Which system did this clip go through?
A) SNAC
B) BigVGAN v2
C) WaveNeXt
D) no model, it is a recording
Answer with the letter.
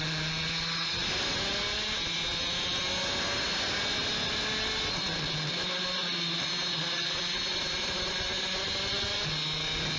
D